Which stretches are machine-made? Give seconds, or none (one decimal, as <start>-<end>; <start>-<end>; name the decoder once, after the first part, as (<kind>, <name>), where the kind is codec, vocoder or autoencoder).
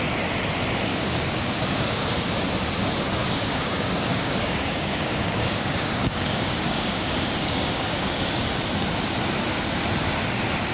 0.9-2.2 (codec, DAC); 3.2-8.2